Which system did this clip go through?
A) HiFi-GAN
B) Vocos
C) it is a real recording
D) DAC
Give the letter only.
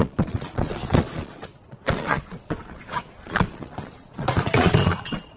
B